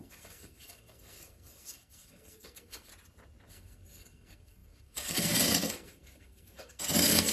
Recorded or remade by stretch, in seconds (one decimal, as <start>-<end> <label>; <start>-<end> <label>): 0.0-2.9 remade; 2.9-3.5 recorded; 3.5-7.3 remade